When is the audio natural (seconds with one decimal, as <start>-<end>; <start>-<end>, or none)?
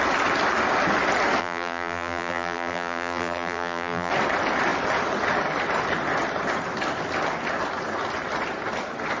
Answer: 0.0-1.4; 4.1-9.2